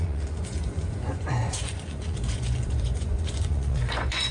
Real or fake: fake